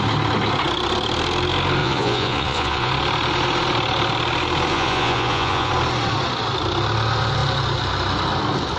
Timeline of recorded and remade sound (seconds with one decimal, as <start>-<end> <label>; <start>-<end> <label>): 0.0-1.8 recorded; 1.8-2.9 remade; 2.9-4.7 recorded; 4.7-5.7 remade; 5.7-8.8 recorded